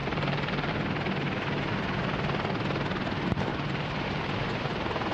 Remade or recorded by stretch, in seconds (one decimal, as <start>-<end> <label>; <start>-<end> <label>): 0.0-0.7 remade; 0.7-3.5 recorded; 3.5-4.2 remade; 4.2-5.1 recorded